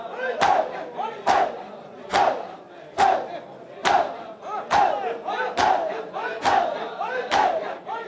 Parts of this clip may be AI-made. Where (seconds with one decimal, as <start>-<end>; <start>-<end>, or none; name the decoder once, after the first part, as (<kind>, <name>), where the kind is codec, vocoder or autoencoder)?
none